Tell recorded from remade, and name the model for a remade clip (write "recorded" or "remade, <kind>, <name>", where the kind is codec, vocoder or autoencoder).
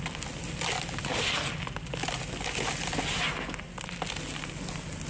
recorded